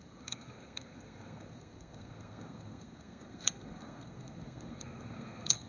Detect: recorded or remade remade